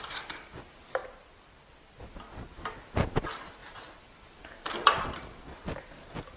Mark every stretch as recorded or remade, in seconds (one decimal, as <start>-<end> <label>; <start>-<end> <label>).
0.0-6.4 recorded

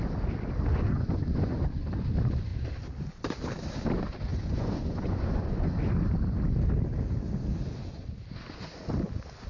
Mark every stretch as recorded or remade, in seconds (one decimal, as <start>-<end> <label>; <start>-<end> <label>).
0.0-0.7 recorded; 0.7-2.1 remade; 2.1-4.3 recorded; 4.3-5.7 remade; 5.7-9.5 recorded

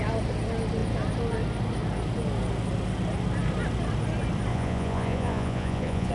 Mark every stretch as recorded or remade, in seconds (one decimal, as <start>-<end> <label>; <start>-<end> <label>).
0.0-4.5 recorded; 4.5-6.1 remade